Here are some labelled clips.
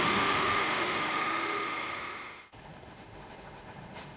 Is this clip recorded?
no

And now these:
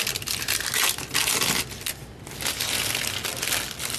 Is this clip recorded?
yes